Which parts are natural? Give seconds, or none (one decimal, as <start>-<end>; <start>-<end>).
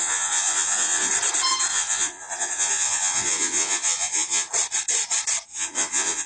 1.1-1.7; 4.5-5.5